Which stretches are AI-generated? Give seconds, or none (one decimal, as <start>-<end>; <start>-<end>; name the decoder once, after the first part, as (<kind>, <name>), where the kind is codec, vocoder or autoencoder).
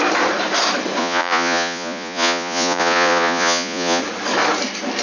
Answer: 1.0-4.0 (vocoder, Vocos)